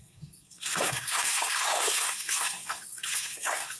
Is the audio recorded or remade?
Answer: remade